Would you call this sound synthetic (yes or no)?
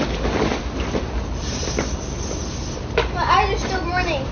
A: no